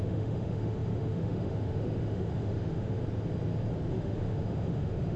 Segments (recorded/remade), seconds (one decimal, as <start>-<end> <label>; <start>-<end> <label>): 0.0-3.0 remade; 3.0-3.9 recorded; 3.9-5.2 remade